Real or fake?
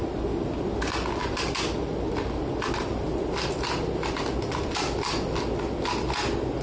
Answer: real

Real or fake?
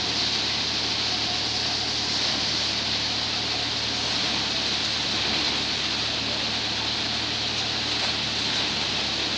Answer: real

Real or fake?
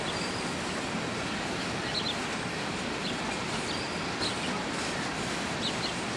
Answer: real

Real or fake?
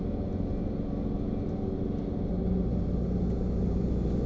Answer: real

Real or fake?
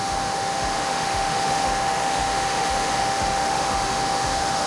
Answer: fake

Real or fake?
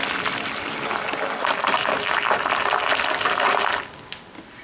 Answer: real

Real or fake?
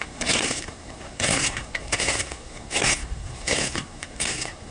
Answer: fake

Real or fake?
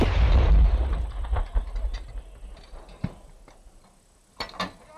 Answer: real